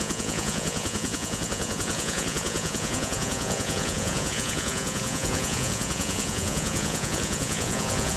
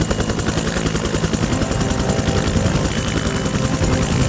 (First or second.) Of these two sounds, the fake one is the first